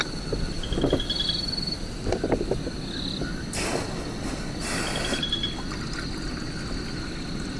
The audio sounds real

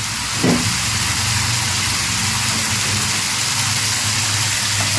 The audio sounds real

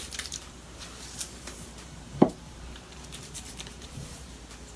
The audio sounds fake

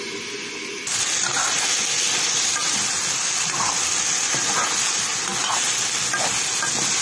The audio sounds real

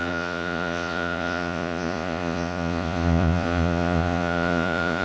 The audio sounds fake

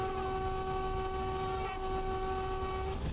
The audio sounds real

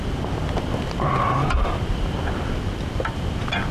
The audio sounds real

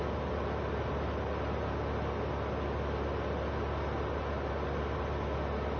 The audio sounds real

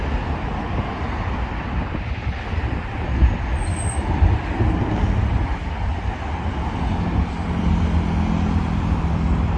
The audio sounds real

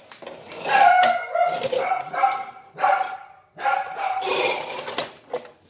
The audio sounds real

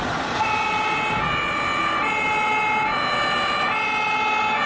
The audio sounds real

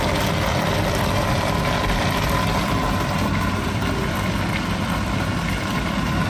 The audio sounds real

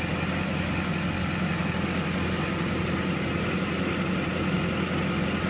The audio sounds real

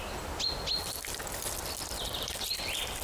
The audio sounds real